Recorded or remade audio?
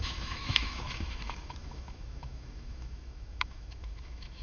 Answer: remade